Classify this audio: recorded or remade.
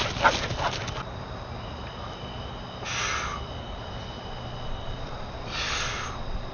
recorded